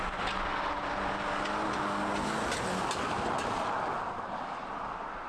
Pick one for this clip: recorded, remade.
recorded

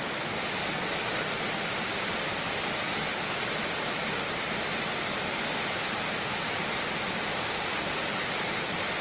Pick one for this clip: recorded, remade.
recorded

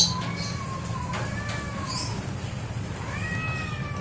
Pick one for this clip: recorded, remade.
recorded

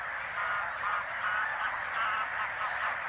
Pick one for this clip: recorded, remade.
recorded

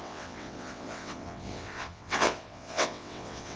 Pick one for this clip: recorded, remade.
remade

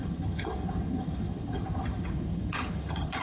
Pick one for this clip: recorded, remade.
remade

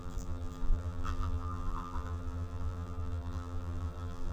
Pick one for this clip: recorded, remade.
remade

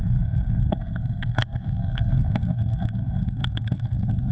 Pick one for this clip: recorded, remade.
remade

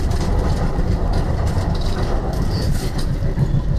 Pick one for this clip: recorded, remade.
remade